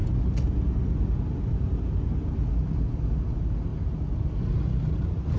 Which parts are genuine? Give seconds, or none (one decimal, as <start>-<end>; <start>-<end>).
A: 0.0-5.4